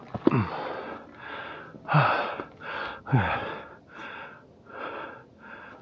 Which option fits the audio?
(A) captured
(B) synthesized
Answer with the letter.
A